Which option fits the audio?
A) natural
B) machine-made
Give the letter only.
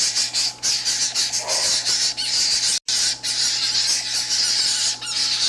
A